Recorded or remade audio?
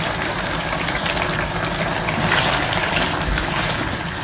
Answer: remade